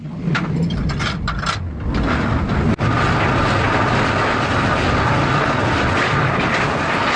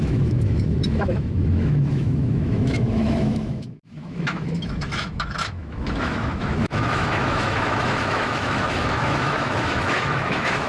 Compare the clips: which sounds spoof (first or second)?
second